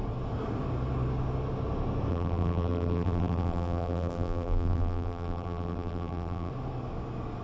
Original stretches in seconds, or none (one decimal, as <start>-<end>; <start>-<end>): 0.0-2.1; 6.5-7.4